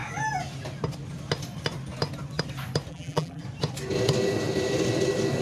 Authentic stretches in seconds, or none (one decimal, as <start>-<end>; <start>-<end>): 0.0-2.9; 3.4-5.4